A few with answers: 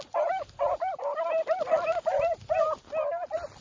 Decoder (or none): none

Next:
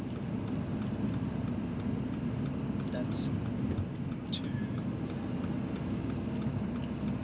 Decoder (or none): none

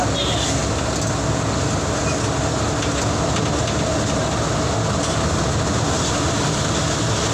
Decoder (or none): none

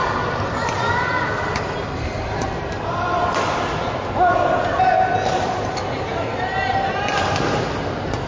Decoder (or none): none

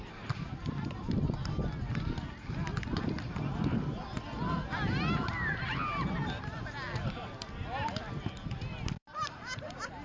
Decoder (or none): none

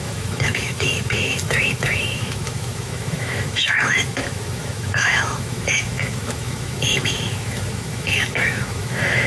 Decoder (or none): autoencoder, DAC-VAE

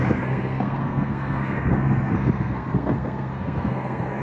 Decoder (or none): codec, SNAC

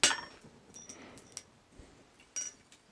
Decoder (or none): none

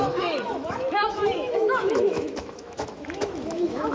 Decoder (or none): autoencoder, DAC-VAE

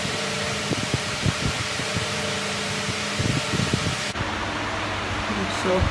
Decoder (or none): vocoder, BigVGAN v2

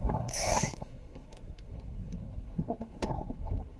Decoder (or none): codec, SNAC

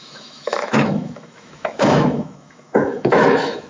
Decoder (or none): autoencoder, DAC-VAE